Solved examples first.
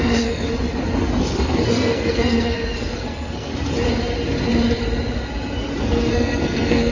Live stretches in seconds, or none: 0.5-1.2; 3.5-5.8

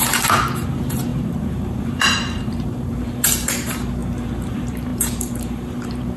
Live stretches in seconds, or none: 4.0-4.5

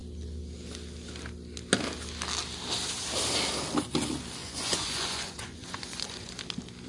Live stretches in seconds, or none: 0.0-4.4; 6.4-6.9